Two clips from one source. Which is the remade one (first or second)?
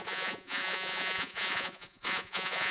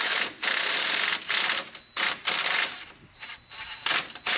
first